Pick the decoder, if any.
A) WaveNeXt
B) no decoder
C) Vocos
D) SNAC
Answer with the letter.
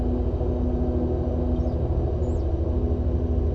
B